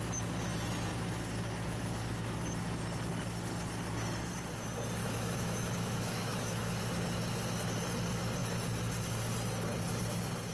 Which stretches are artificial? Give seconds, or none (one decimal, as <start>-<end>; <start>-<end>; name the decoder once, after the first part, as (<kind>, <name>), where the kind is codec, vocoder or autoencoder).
5.0-6.7 (autoencoder, DAC-VAE)